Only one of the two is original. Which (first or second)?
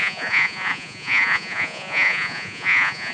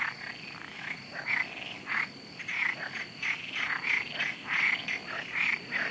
second